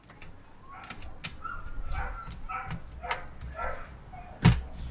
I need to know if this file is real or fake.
real